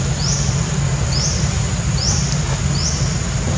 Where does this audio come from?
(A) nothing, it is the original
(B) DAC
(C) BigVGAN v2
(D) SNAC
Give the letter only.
A